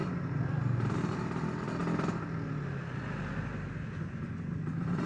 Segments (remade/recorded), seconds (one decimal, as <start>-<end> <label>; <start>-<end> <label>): 0.0-5.1 recorded